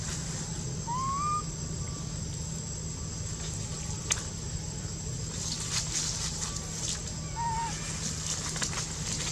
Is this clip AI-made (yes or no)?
no